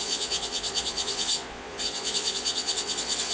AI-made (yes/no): yes